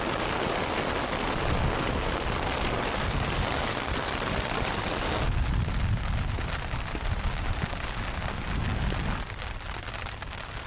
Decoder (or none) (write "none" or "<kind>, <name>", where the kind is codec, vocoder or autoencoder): none